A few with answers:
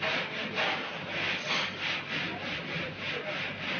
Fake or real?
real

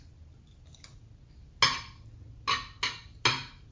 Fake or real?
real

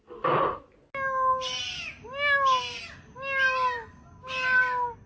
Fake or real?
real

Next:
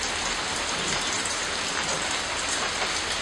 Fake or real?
real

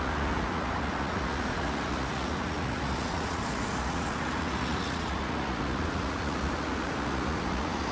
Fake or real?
fake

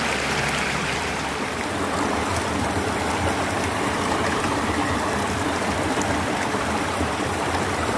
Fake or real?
fake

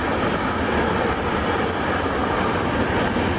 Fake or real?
real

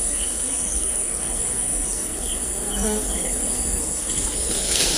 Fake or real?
fake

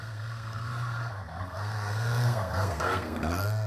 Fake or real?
fake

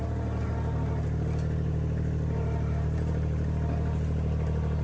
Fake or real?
real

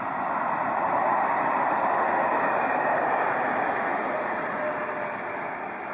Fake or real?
real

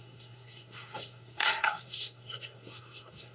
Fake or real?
fake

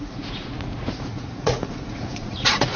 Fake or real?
fake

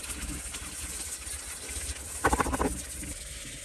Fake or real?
real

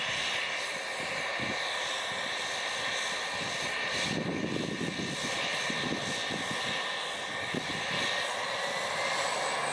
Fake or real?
real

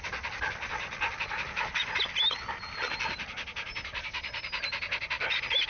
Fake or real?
real